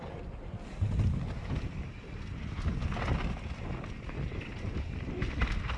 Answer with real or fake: real